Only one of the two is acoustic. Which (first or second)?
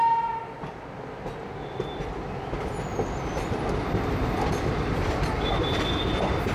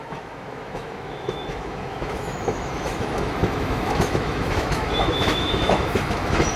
first